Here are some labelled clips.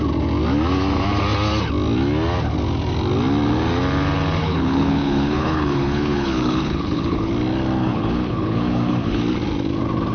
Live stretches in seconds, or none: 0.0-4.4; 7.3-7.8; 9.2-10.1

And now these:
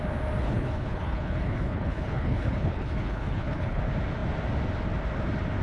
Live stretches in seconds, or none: 0.0-0.4; 3.8-5.6

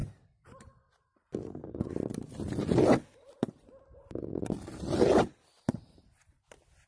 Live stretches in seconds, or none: 0.0-6.9

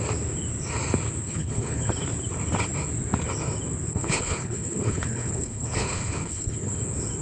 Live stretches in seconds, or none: 0.0-1.2; 1.9-3.9; 6.8-7.2

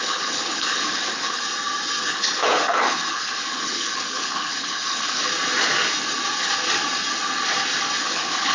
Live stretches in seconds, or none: 1.4-2.0; 5.3-8.0

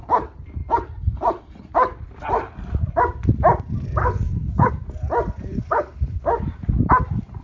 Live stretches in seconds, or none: 0.0-4.0; 4.7-5.5; 6.2-7.4